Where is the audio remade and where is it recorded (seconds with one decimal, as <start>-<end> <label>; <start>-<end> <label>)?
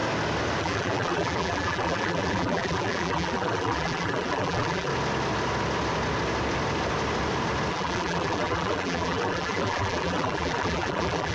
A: 0.0-0.6 recorded; 0.6-4.9 remade; 4.9-7.7 recorded; 7.7-11.3 remade